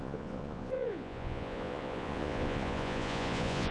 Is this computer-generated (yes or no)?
yes